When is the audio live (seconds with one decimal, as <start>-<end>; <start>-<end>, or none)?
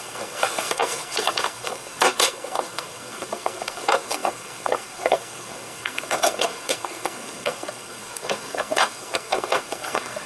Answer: none